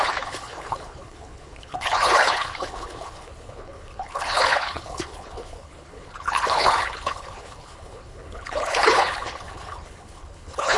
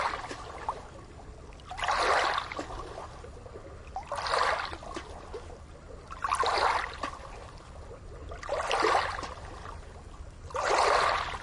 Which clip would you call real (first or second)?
second